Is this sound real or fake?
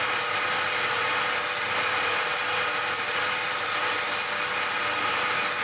real